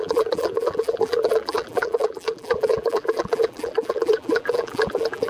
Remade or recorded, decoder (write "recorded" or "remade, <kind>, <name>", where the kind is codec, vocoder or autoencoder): remade, vocoder, BigVGAN v2